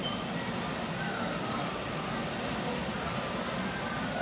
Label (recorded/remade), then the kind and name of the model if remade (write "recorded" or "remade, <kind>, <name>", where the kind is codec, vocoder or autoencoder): recorded